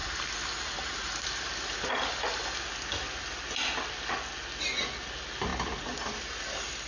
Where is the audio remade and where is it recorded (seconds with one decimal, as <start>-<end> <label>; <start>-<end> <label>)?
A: 0.0-6.9 recorded